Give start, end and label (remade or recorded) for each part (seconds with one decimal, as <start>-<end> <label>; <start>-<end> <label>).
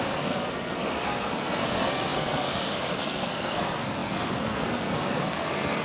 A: 0.0-5.8 remade